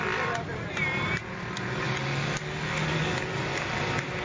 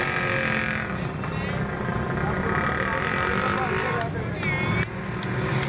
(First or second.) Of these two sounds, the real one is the second